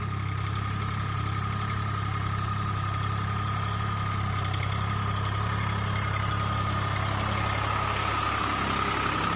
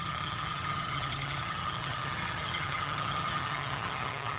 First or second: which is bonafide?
first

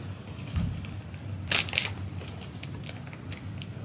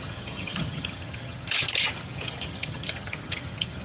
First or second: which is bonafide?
first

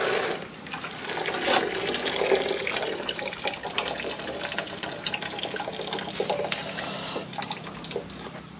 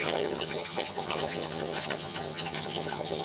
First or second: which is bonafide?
first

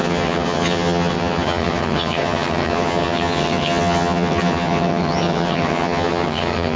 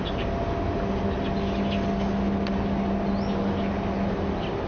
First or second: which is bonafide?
second